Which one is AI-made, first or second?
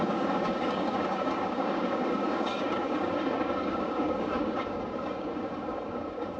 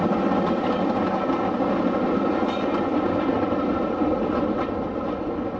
first